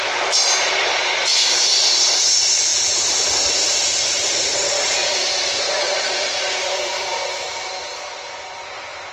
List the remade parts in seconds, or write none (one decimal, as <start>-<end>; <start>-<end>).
1.3-2.0; 2.7-5.7